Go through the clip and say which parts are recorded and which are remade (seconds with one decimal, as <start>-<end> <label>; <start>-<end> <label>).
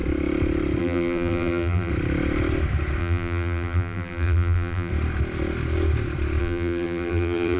0.0-0.8 recorded; 0.8-1.9 remade; 1.9-3.0 recorded; 3.0-4.9 remade; 4.9-6.4 recorded; 6.4-7.6 remade